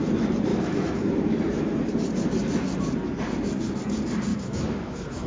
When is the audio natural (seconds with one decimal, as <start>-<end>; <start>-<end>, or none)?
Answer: 0.0-0.5; 1.9-4.3